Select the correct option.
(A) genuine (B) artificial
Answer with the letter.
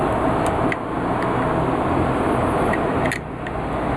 A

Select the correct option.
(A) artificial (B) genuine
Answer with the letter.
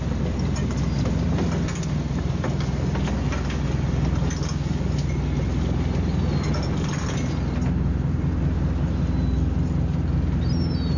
B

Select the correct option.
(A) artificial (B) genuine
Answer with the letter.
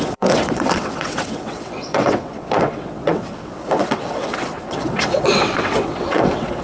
A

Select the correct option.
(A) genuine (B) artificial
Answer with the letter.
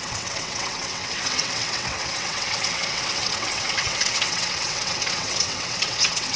B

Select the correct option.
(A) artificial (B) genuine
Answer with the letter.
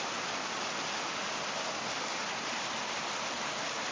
B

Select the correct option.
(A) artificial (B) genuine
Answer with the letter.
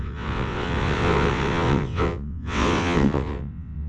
A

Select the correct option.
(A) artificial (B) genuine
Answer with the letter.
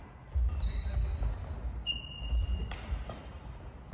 B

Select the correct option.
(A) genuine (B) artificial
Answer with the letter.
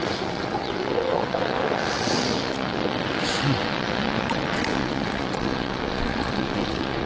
B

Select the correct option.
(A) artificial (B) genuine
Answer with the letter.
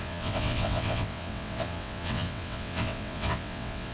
A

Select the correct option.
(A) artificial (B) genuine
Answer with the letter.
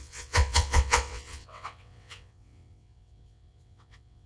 A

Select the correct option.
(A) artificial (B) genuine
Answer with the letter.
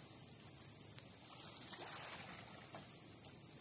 B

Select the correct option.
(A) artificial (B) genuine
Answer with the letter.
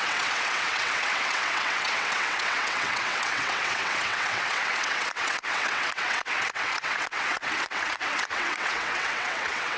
A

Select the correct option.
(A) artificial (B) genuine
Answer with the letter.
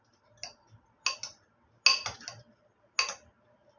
B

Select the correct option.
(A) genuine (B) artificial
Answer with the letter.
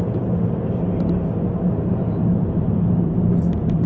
A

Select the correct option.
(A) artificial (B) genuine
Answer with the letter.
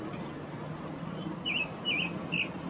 B